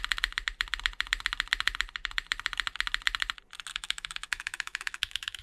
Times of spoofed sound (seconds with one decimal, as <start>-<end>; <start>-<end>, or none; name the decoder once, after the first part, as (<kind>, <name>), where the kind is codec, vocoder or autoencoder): 3.7-5.4 (autoencoder, DAC-VAE)